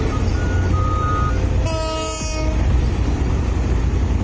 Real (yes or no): yes